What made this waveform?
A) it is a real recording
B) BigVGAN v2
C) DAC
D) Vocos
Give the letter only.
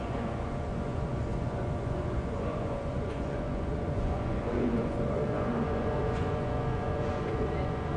D